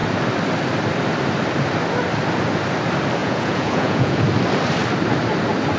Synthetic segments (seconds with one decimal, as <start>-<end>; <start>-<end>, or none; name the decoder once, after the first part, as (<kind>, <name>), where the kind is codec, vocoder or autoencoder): 3.2-4.2 (vocoder, Vocos)